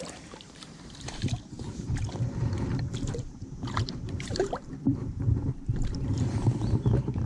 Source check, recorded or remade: remade